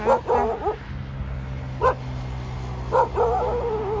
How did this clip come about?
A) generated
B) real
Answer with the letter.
B